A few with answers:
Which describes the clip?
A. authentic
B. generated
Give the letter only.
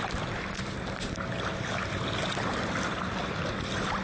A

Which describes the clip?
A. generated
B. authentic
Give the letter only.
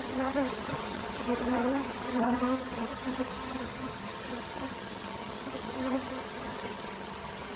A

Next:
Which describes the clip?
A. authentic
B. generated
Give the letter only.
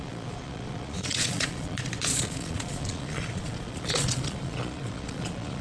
B